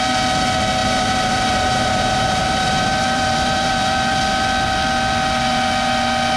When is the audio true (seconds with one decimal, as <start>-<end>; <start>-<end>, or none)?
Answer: 0.0-0.8; 3.7-6.4